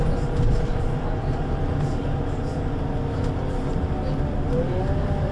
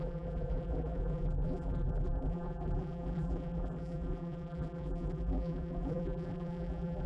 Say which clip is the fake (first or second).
second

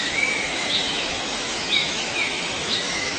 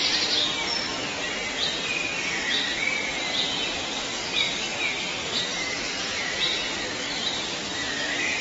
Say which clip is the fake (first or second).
first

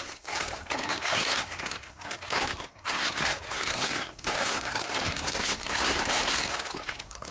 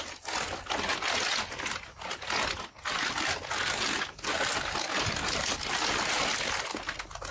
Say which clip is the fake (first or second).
first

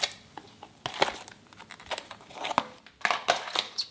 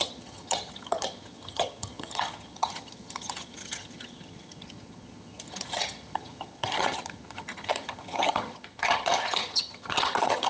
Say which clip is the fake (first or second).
second